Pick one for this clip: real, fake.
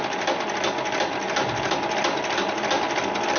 real